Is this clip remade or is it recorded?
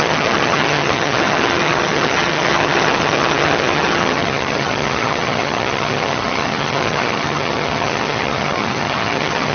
remade